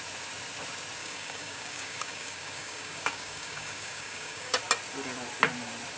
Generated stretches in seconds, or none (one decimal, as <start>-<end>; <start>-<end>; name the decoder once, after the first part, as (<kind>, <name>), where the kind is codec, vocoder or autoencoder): 1.0-4.6 (codec, DAC)